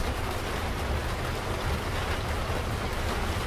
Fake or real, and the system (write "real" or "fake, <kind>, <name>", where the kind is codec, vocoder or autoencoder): real